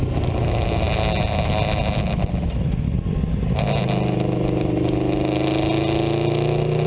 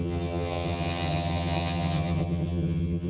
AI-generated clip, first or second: second